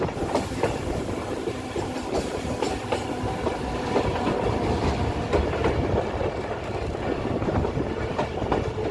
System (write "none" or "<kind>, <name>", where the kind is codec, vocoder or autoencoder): vocoder, BigVGAN v2